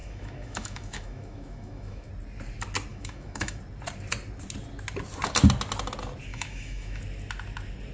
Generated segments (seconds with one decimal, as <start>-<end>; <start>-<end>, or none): 0.0-2.1; 2.9-3.6; 6.3-7.0